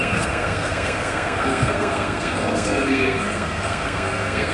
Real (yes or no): no